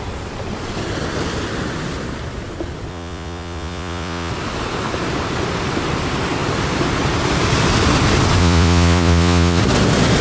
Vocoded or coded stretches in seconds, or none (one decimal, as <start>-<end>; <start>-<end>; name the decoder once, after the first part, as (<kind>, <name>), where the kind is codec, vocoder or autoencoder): 2.9-4.3 (vocoder, Vocos); 8.4-9.6